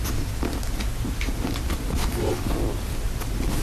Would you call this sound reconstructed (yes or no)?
no